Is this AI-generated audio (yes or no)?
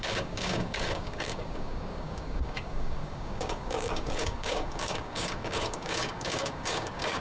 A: yes